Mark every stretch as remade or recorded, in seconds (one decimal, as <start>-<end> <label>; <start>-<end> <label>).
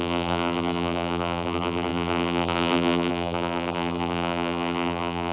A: 0.0-5.3 remade